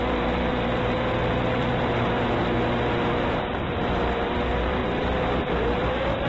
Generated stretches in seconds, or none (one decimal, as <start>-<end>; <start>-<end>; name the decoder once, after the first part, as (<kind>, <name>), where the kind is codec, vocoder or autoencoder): 0.0-6.3 (vocoder, BigVGAN v2)